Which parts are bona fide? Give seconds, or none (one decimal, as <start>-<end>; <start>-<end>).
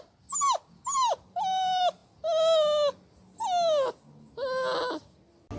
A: 0.0-5.6